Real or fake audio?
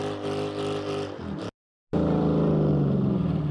real